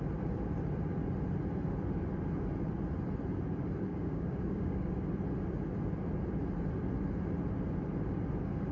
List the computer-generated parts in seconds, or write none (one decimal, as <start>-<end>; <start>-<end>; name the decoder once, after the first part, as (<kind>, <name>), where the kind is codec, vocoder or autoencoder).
3.9-4.9 (codec, DAC)